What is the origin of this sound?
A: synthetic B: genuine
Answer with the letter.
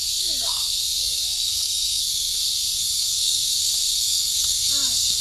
A